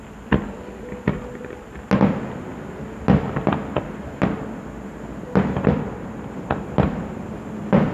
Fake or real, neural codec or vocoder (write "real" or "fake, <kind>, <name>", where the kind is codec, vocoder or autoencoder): real